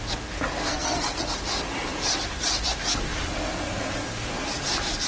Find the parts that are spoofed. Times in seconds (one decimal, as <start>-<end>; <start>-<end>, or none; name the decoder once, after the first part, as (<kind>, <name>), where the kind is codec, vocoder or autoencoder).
0.6-1.2 (codec, SNAC)

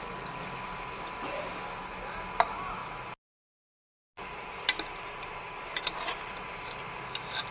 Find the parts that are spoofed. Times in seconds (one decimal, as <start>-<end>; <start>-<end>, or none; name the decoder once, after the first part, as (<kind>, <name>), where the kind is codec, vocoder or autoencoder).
none

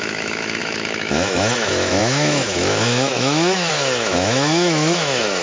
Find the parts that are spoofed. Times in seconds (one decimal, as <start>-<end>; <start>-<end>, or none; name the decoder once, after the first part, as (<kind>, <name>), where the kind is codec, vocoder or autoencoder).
0.0-5.4 (autoencoder, DAC-VAE)

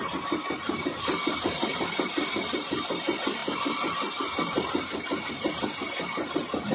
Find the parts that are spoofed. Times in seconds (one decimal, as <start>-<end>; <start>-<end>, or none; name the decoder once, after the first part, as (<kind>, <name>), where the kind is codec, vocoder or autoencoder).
none